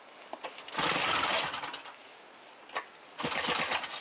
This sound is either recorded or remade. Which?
recorded